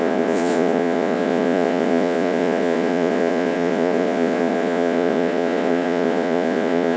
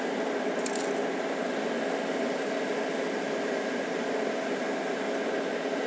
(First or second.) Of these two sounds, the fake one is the first